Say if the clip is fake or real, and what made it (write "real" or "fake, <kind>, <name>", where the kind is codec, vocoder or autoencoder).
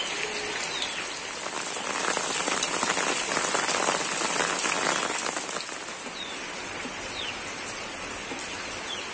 real